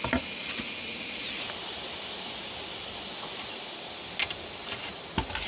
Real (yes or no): yes